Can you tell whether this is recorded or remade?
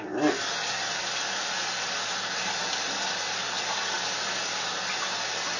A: recorded